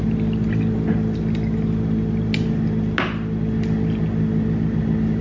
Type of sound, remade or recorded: recorded